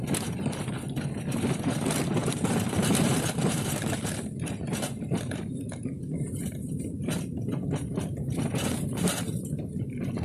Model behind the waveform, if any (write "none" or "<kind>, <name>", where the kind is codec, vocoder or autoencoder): vocoder, BigVGAN v2